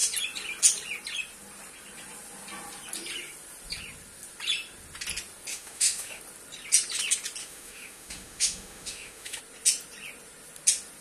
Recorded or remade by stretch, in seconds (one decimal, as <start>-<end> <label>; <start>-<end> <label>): 0.0-5.5 recorded; 5.5-6.2 remade; 6.2-7.4 recorded; 7.4-9.4 remade; 9.4-11.0 recorded